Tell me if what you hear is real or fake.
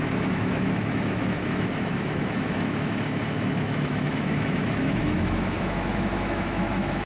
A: fake